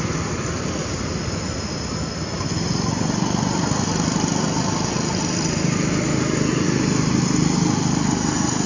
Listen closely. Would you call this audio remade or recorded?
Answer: recorded